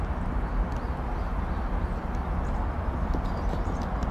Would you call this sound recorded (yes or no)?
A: yes